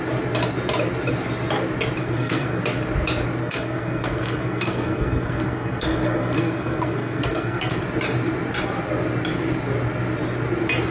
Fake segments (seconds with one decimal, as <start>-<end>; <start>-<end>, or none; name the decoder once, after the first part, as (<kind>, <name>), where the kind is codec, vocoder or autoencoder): 2.0-2.6 (codec, SNAC); 3.4-7.8